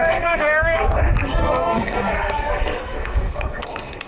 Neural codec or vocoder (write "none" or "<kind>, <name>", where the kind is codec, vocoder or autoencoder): codec, SNAC